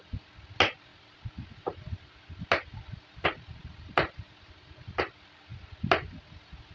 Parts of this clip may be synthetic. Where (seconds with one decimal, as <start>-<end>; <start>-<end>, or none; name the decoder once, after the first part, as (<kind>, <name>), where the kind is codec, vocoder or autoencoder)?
none